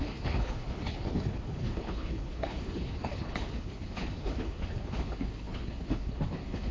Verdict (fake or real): fake